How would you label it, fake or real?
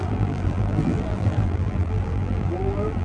fake